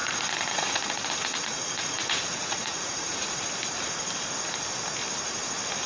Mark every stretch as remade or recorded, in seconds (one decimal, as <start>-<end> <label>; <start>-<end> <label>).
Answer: 0.0-3.5 remade; 3.5-5.9 recorded